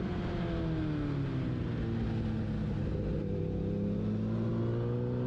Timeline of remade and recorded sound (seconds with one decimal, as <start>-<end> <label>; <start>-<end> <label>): 0.0-5.3 recorded